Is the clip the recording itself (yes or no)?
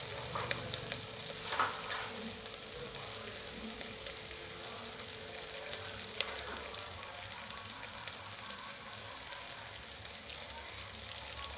yes